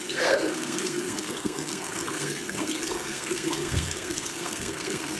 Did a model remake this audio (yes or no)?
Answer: yes